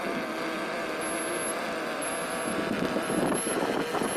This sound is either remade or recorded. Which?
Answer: recorded